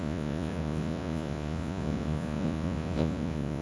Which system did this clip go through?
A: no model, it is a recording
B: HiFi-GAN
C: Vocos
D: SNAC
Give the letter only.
C